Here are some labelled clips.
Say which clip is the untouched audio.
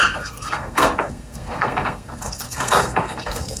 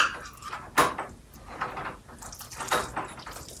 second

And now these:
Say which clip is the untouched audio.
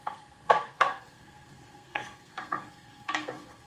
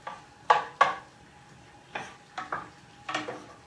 second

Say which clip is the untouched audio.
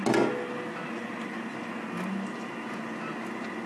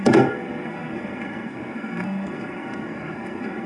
first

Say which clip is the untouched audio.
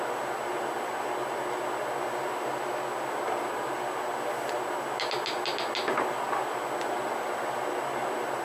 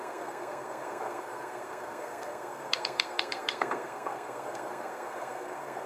first